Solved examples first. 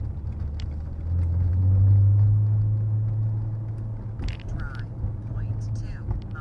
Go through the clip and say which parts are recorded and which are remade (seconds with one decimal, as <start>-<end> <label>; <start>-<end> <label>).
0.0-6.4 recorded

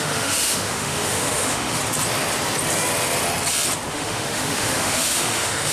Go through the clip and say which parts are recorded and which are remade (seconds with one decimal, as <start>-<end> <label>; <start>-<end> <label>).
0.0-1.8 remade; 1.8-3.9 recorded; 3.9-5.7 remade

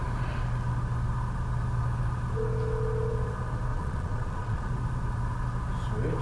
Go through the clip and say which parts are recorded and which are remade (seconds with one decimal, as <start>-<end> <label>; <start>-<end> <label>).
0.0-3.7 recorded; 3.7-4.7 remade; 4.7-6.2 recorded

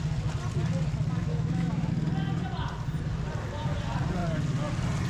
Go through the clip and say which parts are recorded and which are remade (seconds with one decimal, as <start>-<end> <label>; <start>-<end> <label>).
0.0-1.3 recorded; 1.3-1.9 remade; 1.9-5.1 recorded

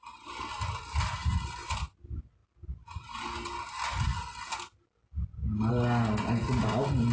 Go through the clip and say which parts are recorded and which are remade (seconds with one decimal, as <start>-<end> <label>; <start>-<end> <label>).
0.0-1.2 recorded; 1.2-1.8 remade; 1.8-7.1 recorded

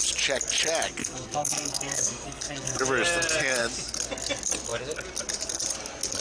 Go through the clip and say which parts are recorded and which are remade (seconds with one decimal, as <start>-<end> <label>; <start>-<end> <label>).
0.0-1.0 recorded; 1.0-2.8 remade; 2.8-6.2 recorded